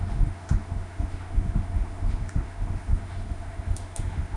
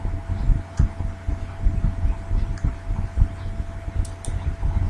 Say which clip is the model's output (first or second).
first